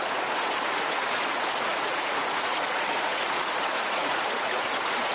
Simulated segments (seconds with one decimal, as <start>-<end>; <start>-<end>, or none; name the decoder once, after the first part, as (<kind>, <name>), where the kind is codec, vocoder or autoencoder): 0.0-5.1 (vocoder, Vocos)